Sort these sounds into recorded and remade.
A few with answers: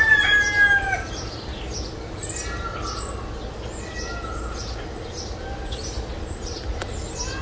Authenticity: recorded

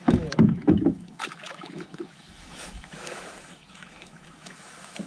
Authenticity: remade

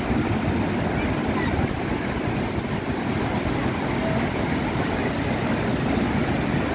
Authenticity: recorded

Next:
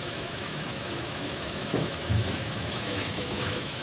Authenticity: remade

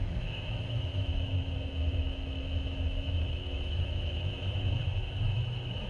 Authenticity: remade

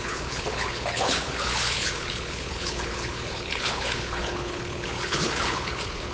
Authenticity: remade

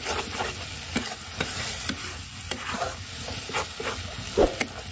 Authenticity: recorded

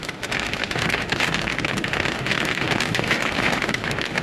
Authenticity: remade